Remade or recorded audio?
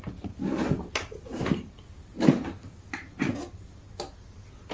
recorded